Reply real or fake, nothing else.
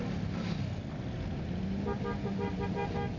real